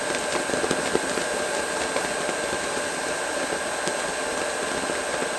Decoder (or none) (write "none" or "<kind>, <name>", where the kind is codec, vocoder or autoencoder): none